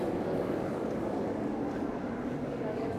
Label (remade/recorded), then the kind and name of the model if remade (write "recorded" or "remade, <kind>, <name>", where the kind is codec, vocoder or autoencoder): remade, codec, DAC